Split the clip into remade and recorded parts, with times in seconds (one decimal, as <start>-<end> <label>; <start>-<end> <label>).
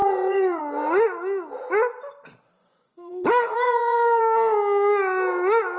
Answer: 0.0-0.6 remade; 0.6-2.6 recorded; 2.6-4.2 remade; 4.2-5.8 recorded